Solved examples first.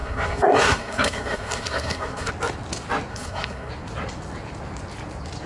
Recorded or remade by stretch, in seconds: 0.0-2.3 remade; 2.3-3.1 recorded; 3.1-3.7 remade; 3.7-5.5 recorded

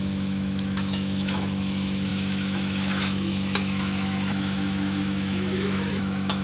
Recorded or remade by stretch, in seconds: 0.0-6.4 remade

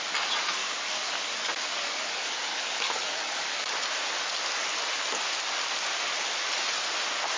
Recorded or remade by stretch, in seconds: 0.0-0.6 recorded; 0.6-2.1 remade; 2.1-2.5 recorded; 2.5-3.8 remade; 3.8-7.4 recorded

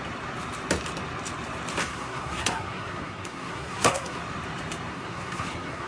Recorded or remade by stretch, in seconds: 0.0-1.8 recorded; 1.8-4.2 remade; 4.2-4.9 recorded; 4.9-5.9 remade

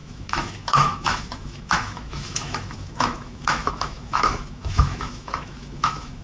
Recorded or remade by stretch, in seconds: 0.0-6.2 remade